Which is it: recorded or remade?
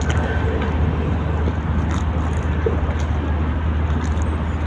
recorded